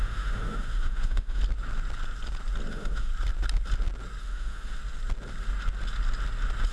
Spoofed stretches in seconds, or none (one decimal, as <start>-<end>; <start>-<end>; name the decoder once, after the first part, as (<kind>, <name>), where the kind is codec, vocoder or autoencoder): 0.0-1.4 (autoencoder, DAC-VAE); 2.7-3.1; 4.2-4.8